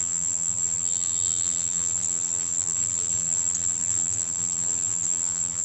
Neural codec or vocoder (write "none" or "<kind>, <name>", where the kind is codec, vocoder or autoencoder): vocoder, BigVGAN v2